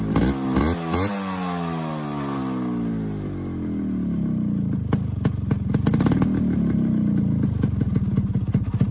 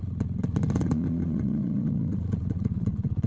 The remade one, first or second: second